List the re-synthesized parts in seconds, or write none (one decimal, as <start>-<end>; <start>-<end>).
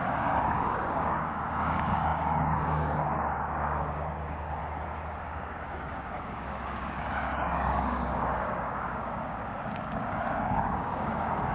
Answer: 0.0-4.6; 5.2-11.5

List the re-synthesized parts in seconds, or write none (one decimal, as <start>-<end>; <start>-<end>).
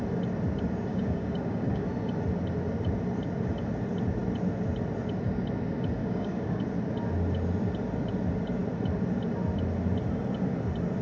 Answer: 0.9-1.8; 6.0-6.6